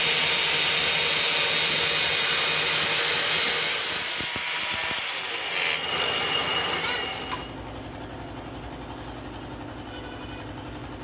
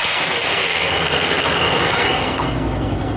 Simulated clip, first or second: second